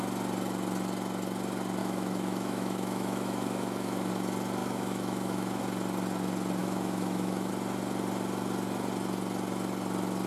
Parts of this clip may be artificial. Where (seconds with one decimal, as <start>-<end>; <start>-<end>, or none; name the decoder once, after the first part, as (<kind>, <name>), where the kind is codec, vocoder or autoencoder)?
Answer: 1.8-4.1 (autoencoder, DAC-VAE); 4.6-5.6; 6.6-7.5